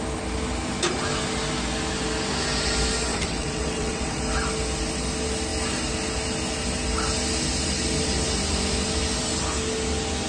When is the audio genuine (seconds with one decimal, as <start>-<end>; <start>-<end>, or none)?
0.0-3.1; 4.2-10.3